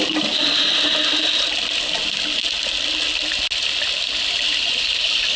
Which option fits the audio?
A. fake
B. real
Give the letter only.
B